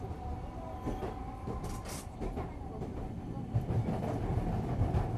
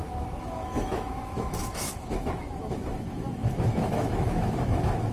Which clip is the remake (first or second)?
second